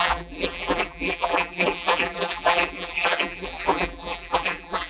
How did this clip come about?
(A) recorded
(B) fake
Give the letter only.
B